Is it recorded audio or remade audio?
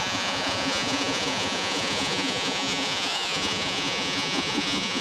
remade